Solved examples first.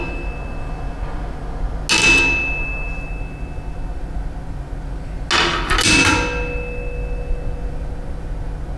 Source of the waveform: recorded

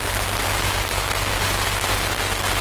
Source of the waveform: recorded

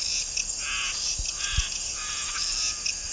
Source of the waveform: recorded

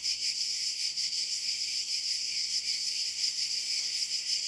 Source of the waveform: remade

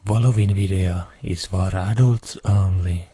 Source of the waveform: remade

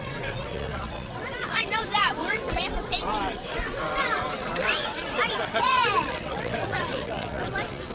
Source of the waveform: remade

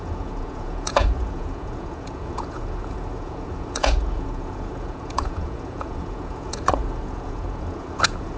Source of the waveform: remade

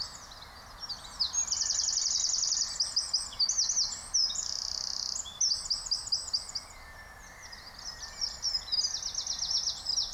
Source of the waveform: recorded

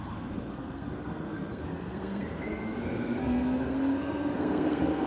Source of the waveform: remade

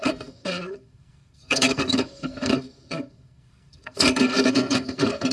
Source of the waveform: remade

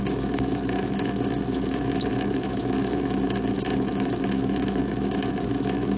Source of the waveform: remade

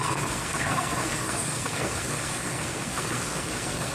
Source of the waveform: remade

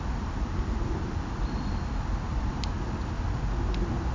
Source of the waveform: recorded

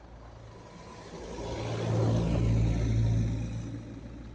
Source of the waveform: recorded